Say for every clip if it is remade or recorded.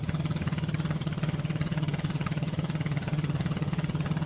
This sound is remade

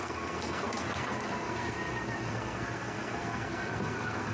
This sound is remade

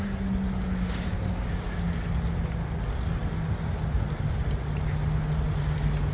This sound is recorded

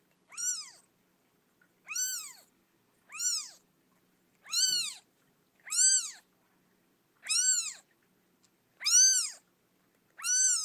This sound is recorded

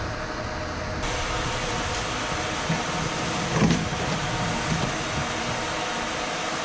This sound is recorded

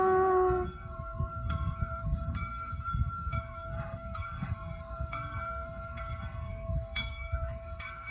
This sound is remade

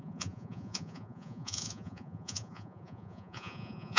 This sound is remade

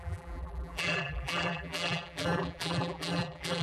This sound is remade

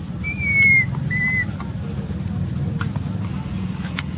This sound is recorded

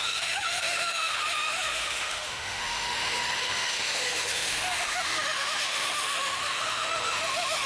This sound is remade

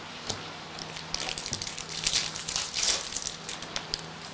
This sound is recorded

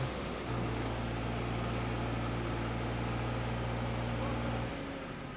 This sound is recorded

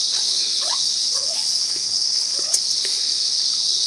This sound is remade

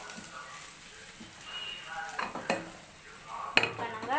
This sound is recorded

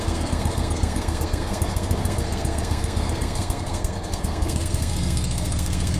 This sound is remade